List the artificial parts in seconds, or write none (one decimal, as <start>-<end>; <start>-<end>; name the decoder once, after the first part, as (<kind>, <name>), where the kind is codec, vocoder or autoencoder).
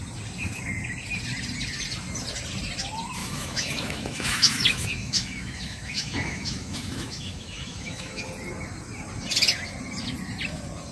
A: 3.2-8.2 (autoencoder, DAC-VAE)